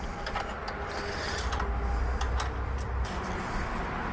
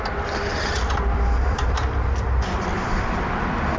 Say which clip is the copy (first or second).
second